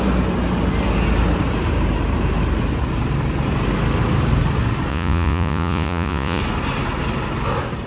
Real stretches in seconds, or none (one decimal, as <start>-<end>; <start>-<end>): 0.0-4.9; 6.4-7.9